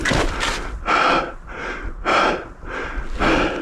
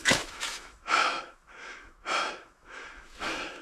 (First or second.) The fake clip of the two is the second